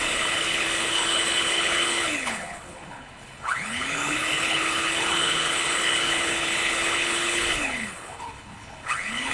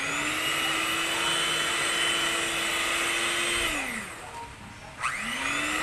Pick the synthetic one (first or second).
first